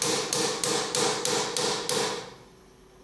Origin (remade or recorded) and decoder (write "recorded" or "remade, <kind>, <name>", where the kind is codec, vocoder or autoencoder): recorded